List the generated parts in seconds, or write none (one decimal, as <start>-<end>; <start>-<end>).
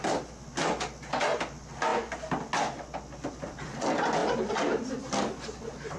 4.2-5.0